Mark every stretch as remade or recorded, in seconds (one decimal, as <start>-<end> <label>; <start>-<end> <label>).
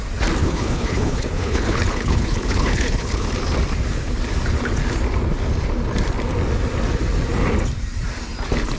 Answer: 0.0-0.4 recorded; 0.4-3.3 remade; 3.3-8.8 recorded